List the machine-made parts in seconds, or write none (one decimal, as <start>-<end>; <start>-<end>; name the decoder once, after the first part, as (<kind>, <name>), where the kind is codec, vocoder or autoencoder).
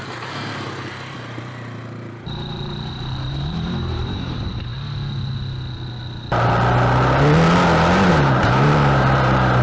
0.0-4.7 (vocoder, BigVGAN v2); 8.1-9.6